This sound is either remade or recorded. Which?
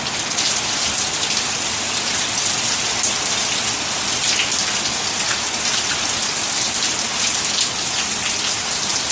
recorded